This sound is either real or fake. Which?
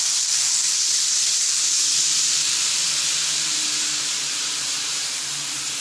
fake